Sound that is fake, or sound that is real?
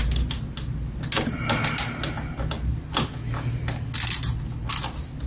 real